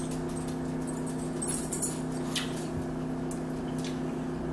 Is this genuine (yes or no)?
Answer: yes